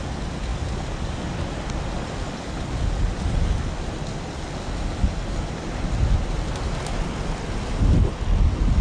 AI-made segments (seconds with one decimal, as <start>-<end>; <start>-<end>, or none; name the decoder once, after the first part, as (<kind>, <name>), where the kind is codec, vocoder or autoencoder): none

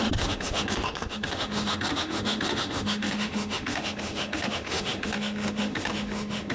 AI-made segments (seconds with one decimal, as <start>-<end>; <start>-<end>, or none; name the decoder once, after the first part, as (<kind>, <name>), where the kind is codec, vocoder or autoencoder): 0.0-6.5 (autoencoder, DAC-VAE)

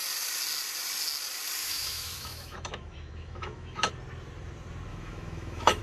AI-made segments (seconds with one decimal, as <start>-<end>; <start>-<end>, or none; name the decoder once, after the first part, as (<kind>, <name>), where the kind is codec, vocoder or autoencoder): 1.6-3.9 (autoencoder, DAC-VAE); 4.9-5.8

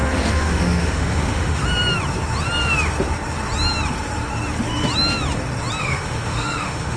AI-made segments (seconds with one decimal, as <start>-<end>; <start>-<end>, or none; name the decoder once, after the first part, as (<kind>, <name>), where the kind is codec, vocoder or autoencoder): 0.0-1.6 (autoencoder, DAC-VAE); 5.8-7.0

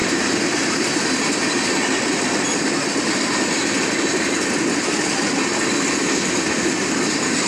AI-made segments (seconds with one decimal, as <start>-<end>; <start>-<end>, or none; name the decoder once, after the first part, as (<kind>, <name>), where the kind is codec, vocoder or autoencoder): none

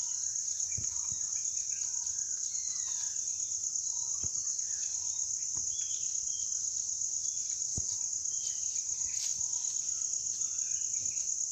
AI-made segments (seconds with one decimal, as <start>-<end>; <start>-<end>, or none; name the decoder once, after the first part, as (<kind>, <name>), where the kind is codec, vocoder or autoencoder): none

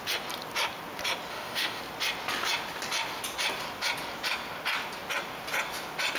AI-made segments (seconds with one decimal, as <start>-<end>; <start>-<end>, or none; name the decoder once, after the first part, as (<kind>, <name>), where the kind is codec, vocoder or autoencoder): 1.3-1.8 (autoencoder, DAC-VAE)